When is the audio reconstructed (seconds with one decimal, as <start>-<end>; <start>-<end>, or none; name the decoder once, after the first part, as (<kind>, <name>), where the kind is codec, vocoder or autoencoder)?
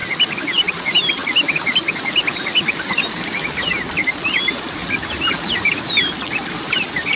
none